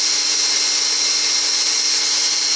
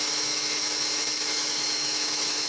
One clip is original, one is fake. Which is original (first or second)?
first